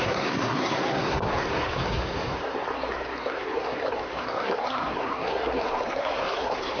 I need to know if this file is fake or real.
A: fake